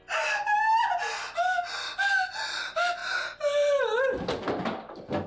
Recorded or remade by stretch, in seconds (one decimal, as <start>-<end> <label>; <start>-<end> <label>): 0.0-5.3 recorded